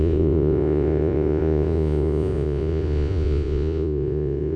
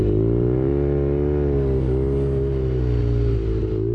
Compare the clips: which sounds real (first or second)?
second